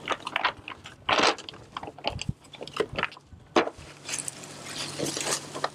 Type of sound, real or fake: real